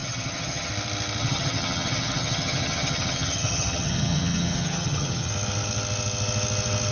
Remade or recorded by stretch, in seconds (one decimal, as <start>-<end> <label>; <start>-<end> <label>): 0.0-0.7 remade; 0.7-1.2 recorded; 1.2-5.3 remade; 5.3-6.9 recorded